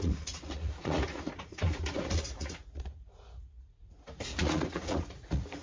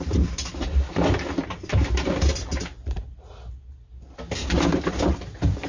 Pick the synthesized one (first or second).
first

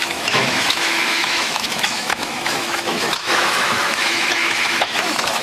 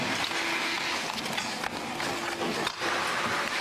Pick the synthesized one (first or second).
first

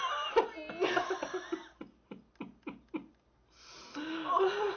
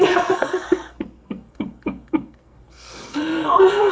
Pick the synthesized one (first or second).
second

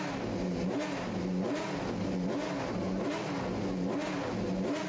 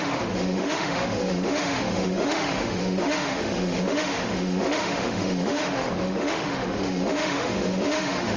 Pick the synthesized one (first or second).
second